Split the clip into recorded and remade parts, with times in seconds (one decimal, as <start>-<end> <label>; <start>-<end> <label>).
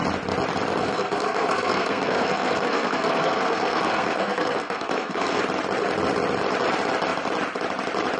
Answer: 0.0-0.8 recorded; 0.8-5.4 remade; 5.4-8.2 recorded